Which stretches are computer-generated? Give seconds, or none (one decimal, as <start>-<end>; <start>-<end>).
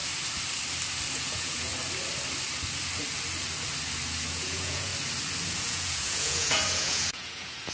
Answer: 1.1-1.7; 4.3-4.9; 5.5-7.7